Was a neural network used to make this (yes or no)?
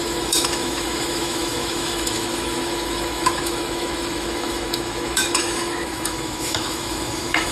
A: yes